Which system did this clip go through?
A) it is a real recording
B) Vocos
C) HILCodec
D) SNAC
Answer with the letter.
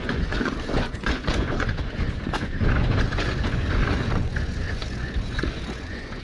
B